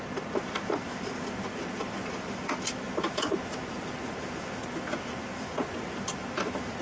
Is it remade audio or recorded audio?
recorded